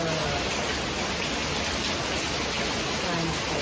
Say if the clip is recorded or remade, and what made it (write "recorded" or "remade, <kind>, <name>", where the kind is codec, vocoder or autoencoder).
recorded